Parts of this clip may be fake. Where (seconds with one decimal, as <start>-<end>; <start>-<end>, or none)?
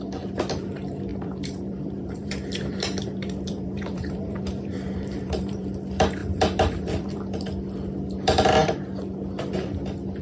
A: 1.1-5.6; 6.2-7.2